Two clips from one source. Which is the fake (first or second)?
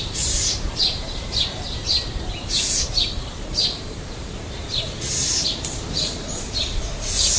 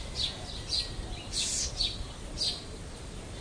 first